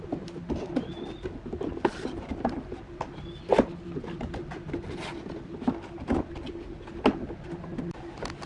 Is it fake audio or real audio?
real